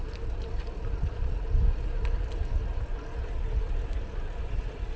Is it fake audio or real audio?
real